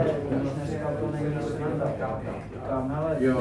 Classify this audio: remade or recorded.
recorded